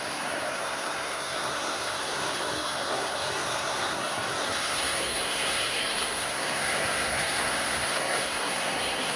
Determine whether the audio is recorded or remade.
remade